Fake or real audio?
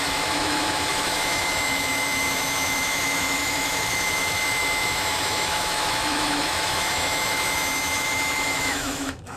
fake